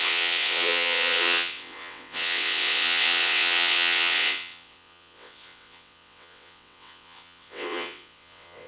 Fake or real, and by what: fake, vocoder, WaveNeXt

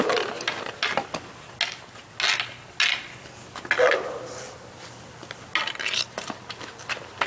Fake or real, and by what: real